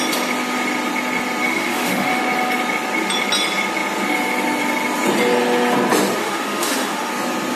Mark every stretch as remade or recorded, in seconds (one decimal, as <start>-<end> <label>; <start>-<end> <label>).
0.0-1.4 recorded; 1.4-2.2 remade; 2.2-6.2 recorded; 6.2-7.1 remade; 7.1-7.6 recorded